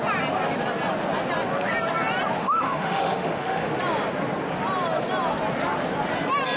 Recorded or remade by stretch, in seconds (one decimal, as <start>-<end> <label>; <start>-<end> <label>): 0.0-2.4 recorded; 2.4-3.7 remade; 3.7-6.6 recorded